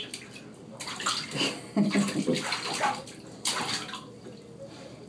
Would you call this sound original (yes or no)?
yes